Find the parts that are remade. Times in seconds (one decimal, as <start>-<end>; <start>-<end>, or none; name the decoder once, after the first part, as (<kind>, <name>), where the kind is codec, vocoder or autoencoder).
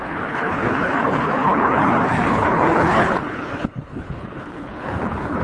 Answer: 0.0-5.4 (codec, HILCodec)